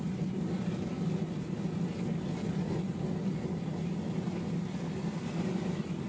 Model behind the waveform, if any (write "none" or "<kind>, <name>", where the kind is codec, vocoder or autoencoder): none